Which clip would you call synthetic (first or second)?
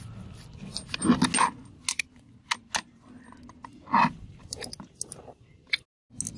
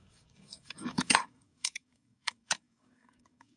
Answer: second